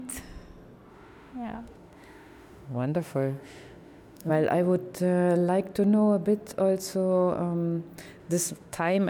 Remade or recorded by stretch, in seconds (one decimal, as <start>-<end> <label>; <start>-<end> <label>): 0.0-0.9 recorded; 0.9-4.3 remade; 4.3-8.2 recorded; 8.2-9.1 remade